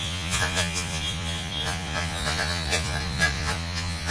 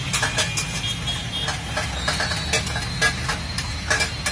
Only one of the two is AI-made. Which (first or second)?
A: first